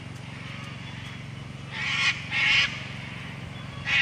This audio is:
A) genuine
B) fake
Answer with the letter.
A